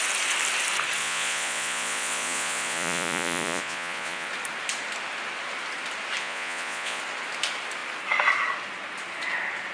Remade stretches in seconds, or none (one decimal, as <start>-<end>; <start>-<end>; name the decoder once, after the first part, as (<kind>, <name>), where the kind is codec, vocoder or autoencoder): 1.0-4.3 (vocoder, Vocos); 6.2-7.0